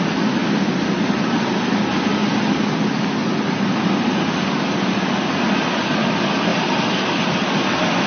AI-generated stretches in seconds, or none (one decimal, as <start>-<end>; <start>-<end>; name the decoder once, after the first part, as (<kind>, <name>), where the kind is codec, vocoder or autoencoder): none